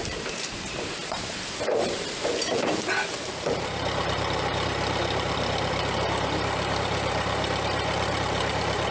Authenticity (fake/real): fake